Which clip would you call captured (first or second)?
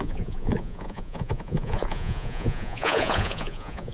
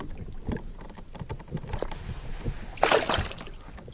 second